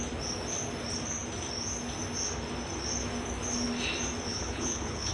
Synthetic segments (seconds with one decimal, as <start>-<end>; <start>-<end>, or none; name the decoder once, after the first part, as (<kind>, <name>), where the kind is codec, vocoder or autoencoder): 4.3-5.1 (codec, HILCodec)